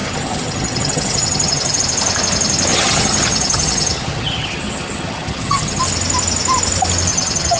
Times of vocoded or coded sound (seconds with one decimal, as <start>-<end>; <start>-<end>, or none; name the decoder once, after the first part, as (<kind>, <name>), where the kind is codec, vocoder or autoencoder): 0.0-1.8 (vocoder, HiFi-GAN); 2.7-5.8; 7.1-7.6